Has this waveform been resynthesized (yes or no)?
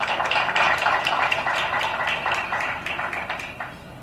no